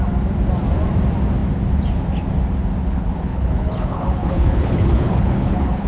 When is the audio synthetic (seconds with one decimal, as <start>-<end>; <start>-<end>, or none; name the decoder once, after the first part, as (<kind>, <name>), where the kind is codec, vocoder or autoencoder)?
2.8-5.9 (codec, HILCodec)